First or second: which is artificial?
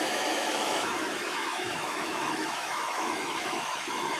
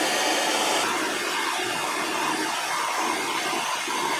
first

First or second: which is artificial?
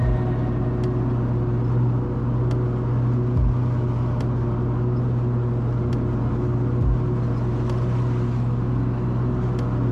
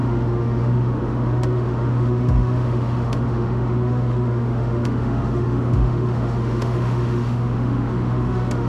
second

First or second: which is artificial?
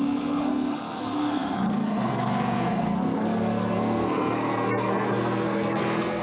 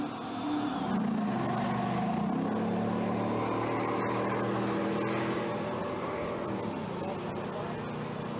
first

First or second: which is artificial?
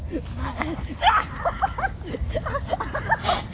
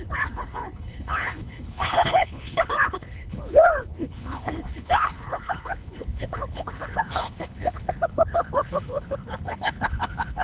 second